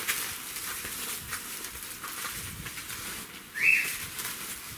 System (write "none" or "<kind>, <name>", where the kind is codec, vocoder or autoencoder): none